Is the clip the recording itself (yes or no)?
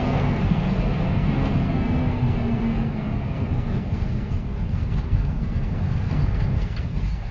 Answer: no